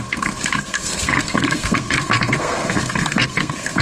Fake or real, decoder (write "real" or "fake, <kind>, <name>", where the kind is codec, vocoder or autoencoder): fake, codec, SNAC